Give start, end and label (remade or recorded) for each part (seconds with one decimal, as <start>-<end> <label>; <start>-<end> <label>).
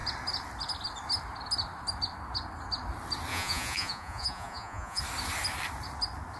0.0-3.3 recorded; 3.3-5.0 remade; 5.0-6.4 recorded